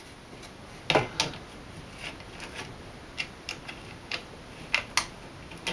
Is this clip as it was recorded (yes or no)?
yes